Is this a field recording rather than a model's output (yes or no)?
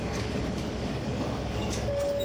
no